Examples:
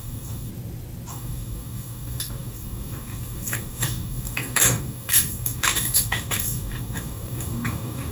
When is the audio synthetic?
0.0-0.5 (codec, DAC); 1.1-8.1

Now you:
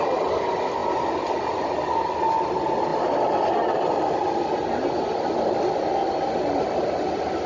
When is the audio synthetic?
none

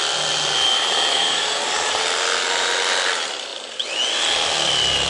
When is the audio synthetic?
1.1-1.9 (codec, DAC)

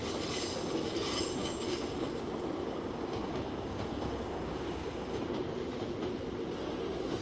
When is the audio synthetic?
1.4-2.2 (codec, DAC); 2.6-5.2

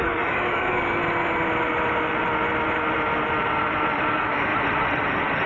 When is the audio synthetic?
0.0-1.0 (codec, DAC); 4.1-4.5

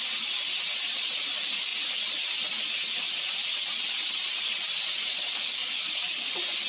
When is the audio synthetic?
5.3-6.3 (codec, DAC)

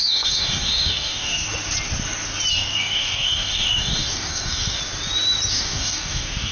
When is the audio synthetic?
0.0-1.5 (codec, DAC); 2.5-4.8; 5.5-6.5

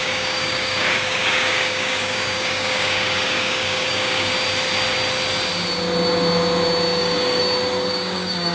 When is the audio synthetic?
0.0-4.3 (codec, DAC); 7.0-7.4; 7.9-8.5